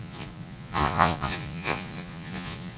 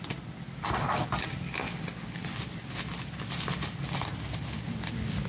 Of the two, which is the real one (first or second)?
second